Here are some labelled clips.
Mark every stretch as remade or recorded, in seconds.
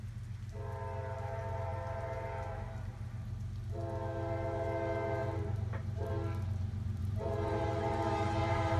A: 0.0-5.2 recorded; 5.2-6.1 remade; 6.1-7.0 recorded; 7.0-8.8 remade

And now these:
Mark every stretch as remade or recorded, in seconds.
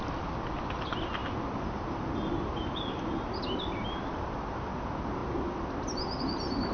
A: 0.0-6.7 recorded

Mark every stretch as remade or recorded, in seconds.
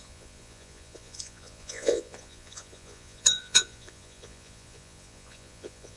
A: 0.0-6.0 remade